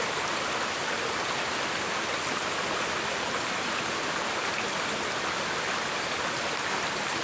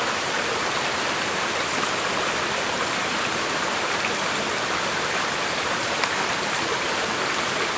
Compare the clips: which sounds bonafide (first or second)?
first